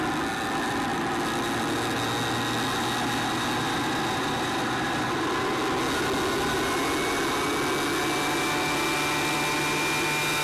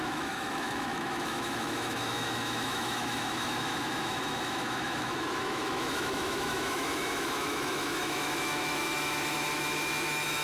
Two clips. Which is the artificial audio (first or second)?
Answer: second